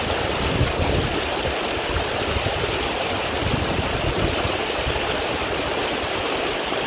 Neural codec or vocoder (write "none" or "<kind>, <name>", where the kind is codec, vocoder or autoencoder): none